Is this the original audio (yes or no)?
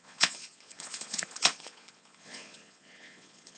no